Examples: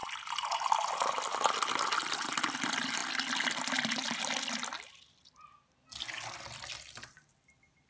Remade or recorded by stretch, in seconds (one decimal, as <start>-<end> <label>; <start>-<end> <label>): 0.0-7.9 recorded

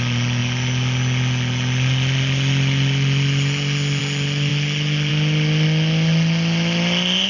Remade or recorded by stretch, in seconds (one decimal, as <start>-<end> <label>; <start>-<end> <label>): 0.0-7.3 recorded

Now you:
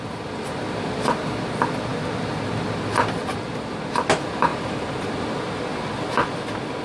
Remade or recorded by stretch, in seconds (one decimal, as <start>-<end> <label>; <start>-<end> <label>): 0.0-4.5 recorded; 4.5-5.2 remade; 5.2-5.7 recorded; 5.7-6.2 remade; 6.2-6.8 recorded

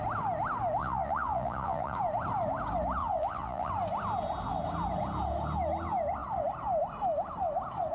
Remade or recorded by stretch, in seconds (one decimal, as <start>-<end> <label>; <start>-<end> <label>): 0.0-0.8 recorded; 0.8-2.0 remade; 2.0-3.0 recorded; 3.0-3.7 remade; 3.7-7.9 recorded

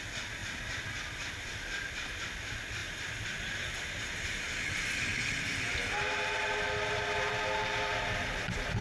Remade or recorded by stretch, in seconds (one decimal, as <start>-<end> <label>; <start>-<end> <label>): 0.0-8.8 recorded

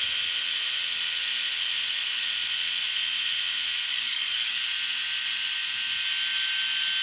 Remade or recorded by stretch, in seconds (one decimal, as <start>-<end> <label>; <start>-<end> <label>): 0.0-3.9 recorded; 3.9-4.6 remade; 4.6-7.0 recorded

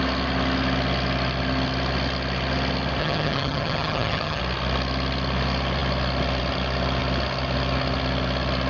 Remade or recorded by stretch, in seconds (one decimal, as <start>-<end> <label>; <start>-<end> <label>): 0.0-3.0 recorded; 3.0-4.4 remade; 4.4-8.7 recorded

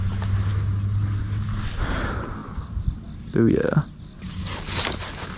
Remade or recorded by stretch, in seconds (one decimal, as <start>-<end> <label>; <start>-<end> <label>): 0.0-5.4 recorded